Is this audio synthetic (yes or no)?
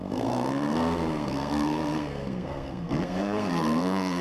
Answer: yes